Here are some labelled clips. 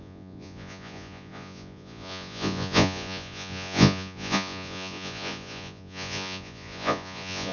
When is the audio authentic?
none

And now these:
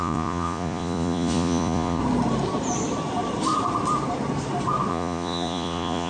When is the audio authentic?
2.0-4.9

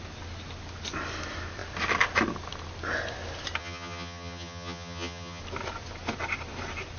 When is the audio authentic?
0.0-3.6; 5.4-7.0

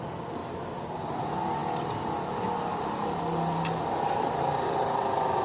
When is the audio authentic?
0.0-5.4

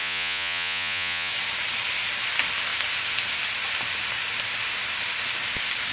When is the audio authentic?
1.3-5.9

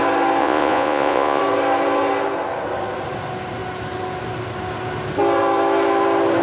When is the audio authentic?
0.0-0.4; 1.4-6.4

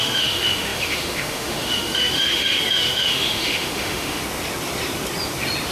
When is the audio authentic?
4.2-5.7